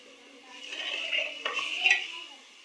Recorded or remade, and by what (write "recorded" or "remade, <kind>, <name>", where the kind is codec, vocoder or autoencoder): recorded